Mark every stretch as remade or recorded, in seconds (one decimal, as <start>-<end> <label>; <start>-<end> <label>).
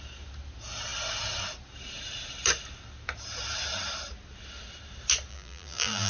0.0-5.3 recorded; 5.3-6.1 remade